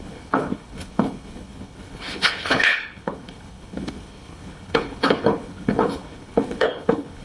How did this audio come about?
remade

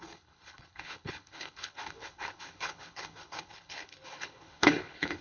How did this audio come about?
remade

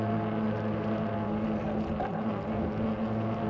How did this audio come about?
recorded